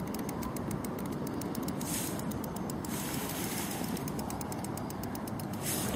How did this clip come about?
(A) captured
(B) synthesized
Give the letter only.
A